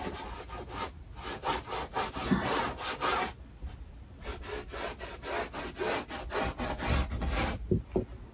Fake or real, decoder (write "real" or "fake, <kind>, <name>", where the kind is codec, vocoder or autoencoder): real